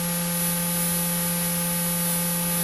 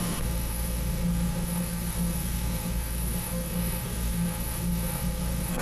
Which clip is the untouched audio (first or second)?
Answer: first